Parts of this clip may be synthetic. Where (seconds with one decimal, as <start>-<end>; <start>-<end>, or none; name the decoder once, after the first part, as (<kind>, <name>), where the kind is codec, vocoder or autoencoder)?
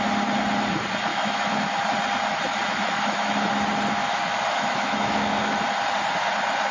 1.1-1.9 (autoencoder, DAC-VAE); 2.5-3.5; 4.0-5.5